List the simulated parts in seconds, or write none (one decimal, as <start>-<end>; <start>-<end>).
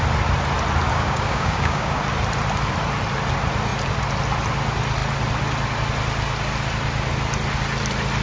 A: 0.9-2.0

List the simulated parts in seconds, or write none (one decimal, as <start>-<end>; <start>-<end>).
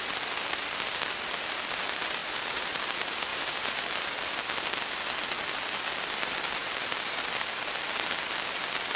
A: 2.2-2.8; 3.3-4.1; 6.6-7.2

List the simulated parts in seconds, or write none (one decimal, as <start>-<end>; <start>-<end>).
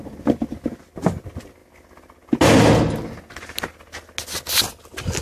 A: none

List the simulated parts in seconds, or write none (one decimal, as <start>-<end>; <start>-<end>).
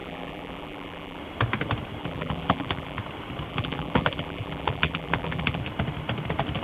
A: 0.0-1.2; 2.0-3.0; 3.5-5.6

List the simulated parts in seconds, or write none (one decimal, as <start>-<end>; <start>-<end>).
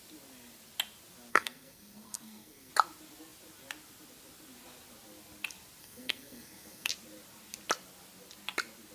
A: 1.3-2.7; 5.8-6.9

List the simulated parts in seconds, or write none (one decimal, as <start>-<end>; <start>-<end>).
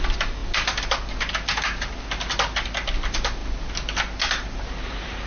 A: none